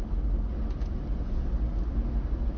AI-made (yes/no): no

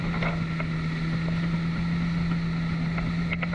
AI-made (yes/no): no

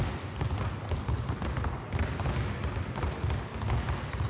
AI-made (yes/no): no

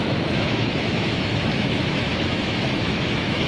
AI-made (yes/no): yes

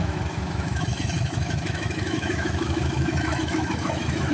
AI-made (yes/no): yes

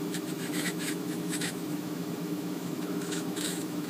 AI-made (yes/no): yes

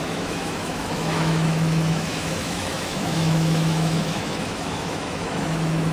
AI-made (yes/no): yes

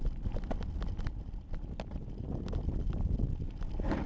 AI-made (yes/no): no